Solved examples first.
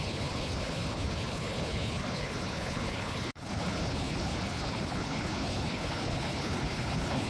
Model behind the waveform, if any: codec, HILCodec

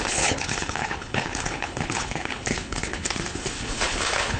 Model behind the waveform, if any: codec, HILCodec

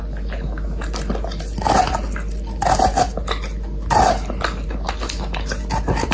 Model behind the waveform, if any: none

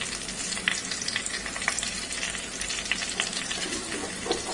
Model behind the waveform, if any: none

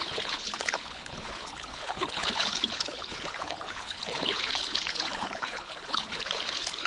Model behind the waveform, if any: codec, HILCodec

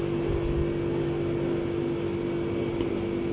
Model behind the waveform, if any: none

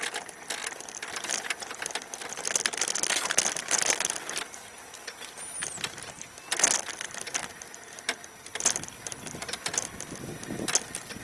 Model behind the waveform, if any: none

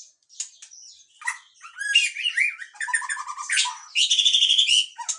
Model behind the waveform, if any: none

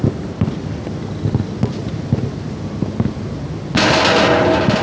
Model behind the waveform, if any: none